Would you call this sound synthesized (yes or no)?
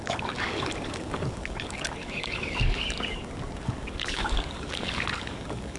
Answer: yes